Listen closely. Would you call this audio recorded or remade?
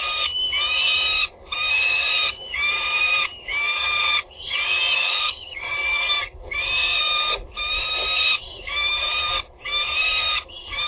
remade